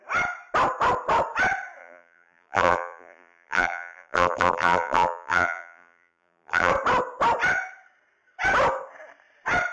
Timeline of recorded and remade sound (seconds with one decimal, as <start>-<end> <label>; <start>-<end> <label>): 0.0-1.8 recorded; 1.8-6.7 remade; 6.7-9.7 recorded